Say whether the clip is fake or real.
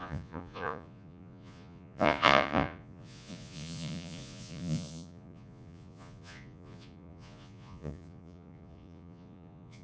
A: fake